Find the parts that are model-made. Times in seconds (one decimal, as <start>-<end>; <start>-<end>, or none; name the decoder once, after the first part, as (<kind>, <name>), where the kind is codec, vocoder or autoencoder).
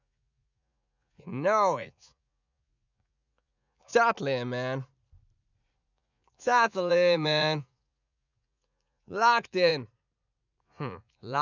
0.0-3.9 (vocoder, Vocos); 5.9-9.7; 10.6-11.4